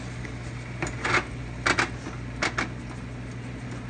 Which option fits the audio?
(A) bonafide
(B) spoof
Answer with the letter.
A